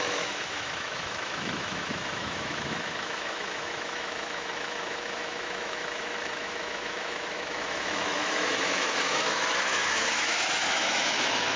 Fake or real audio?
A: fake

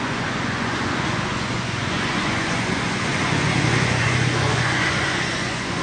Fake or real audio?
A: fake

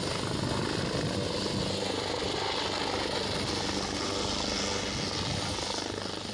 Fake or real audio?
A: real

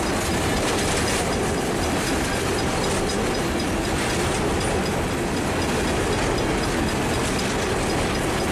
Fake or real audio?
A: real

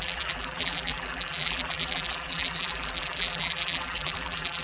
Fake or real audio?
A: fake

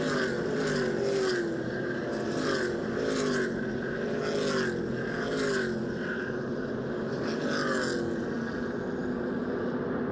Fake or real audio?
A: real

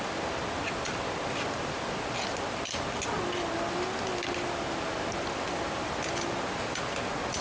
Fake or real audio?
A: real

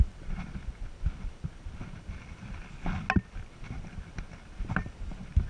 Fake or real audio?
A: real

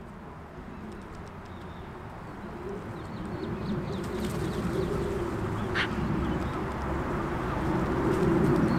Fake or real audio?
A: real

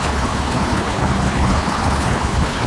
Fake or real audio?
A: fake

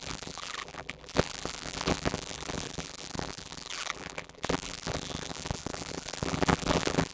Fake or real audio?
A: fake